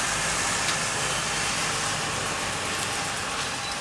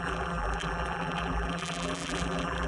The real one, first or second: first